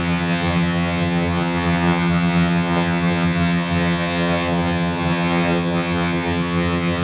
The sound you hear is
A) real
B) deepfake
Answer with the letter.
B